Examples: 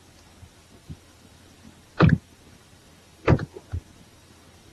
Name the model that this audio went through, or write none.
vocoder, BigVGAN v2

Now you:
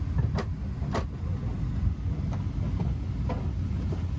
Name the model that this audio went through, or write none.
none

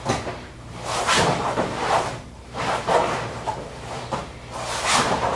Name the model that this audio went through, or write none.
vocoder, BigVGAN v2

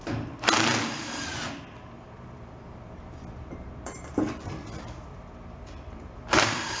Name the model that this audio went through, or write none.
vocoder, BigVGAN v2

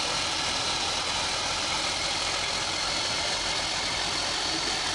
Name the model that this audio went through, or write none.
none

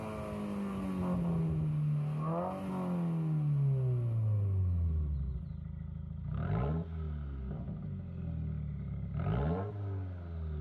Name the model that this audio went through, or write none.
none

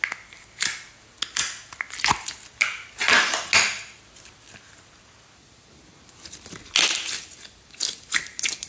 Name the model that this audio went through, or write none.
none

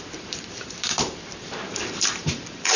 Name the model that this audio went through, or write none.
vocoder, BigVGAN v2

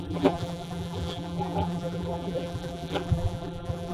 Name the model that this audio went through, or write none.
vocoder, BigVGAN v2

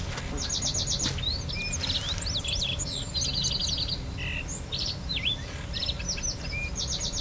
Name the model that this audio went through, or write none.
none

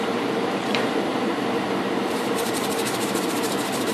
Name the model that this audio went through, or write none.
vocoder, BigVGAN v2